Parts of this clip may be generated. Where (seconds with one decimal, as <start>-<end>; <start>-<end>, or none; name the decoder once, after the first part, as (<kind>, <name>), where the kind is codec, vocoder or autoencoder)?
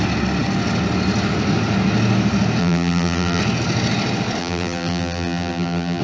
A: 2.6-3.4 (vocoder, BigVGAN v2); 4.4-6.0